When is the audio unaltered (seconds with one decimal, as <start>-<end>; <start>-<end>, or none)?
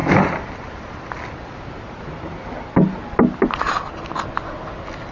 0.0-5.1